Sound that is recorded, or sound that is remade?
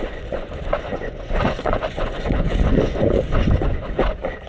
remade